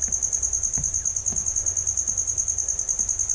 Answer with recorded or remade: recorded